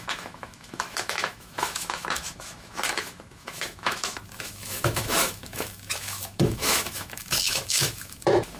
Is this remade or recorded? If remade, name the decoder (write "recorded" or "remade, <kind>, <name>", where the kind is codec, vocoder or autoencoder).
remade, autoencoder, DAC-VAE